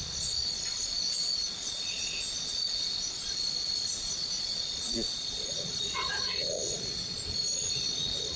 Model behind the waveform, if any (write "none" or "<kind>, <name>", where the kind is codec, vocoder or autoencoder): vocoder, Vocos